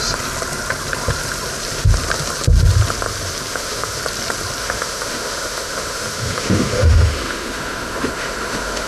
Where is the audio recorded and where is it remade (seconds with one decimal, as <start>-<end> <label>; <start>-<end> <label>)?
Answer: 0.0-3.5 recorded; 3.5-4.0 remade; 4.0-4.6 recorded; 4.6-8.9 remade